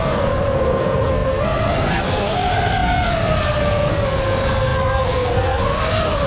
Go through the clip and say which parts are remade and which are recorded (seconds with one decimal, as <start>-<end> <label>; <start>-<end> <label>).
0.0-6.3 remade